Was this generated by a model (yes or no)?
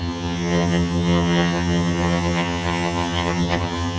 yes